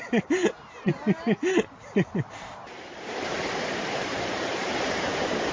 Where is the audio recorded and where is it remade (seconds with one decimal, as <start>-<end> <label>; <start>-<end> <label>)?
0.0-0.9 remade; 0.9-2.4 recorded; 2.4-5.5 remade